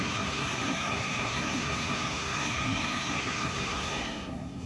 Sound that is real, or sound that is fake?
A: fake